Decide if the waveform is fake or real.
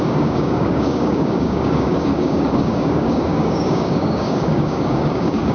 fake